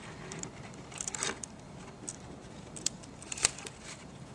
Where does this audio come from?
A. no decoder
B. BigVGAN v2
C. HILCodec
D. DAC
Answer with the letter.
B